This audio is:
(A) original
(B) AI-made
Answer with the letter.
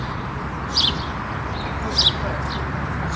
A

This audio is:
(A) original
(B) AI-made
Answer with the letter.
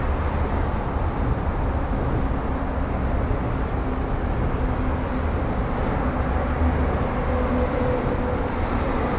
A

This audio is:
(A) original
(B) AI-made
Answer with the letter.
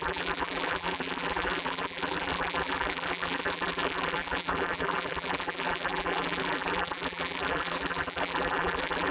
B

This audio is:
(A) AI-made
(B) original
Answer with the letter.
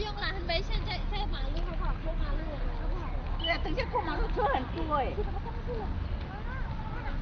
B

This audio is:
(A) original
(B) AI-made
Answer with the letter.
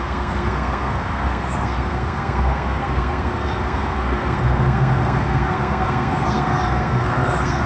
B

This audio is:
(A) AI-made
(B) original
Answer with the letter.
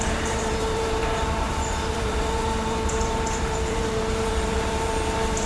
A